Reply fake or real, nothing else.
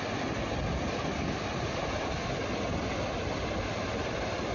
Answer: real